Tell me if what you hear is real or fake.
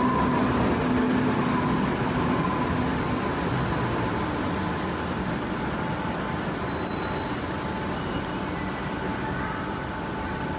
real